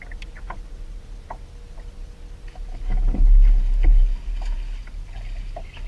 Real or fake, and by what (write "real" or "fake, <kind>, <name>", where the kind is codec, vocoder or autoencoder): real